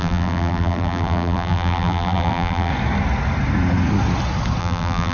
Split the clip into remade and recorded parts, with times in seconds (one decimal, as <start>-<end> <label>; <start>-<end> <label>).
0.0-2.7 remade; 2.7-4.6 recorded; 4.6-5.1 remade